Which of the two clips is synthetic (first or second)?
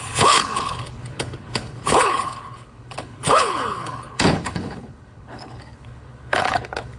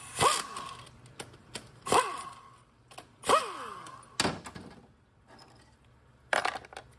first